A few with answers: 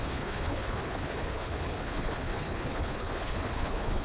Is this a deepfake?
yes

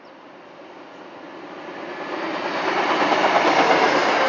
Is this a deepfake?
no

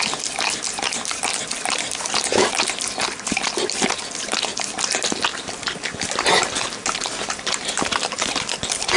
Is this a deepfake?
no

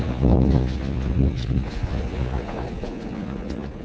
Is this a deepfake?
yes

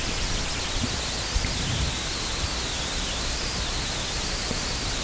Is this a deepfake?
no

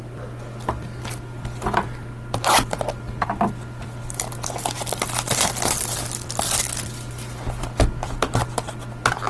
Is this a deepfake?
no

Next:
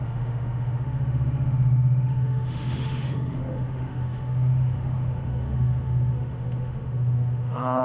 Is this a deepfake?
yes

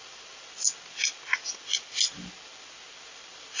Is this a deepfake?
no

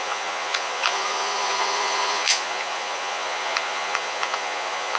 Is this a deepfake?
yes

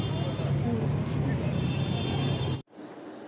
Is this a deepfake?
no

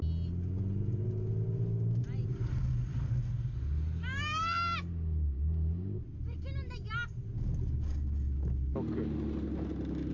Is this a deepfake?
no